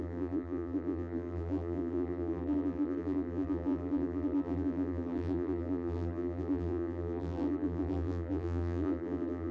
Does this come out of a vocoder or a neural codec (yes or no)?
yes